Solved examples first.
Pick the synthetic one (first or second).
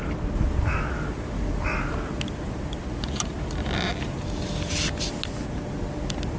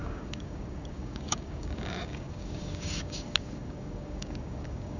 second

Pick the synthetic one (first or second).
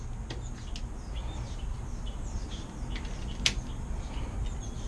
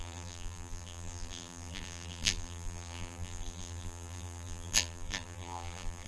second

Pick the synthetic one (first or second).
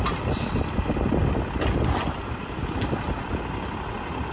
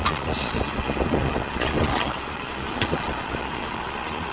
second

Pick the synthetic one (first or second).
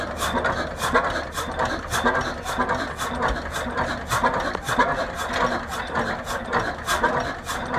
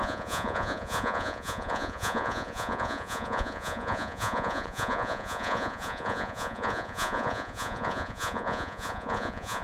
second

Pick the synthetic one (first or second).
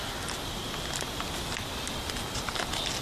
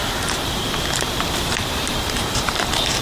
second